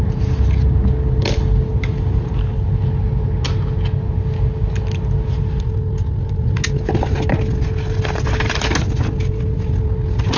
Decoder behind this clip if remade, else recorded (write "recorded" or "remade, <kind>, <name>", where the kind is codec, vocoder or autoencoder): recorded